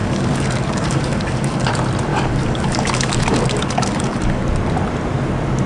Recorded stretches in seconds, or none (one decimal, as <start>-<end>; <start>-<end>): 1.7-2.1; 4.4-5.7